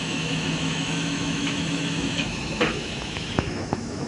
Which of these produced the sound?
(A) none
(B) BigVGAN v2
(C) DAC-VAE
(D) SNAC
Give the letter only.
C